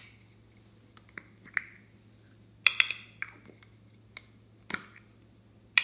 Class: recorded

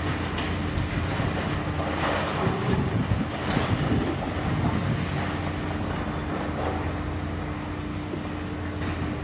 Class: recorded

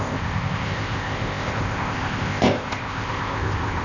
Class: remade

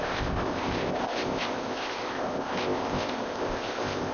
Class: remade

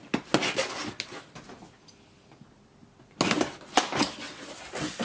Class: recorded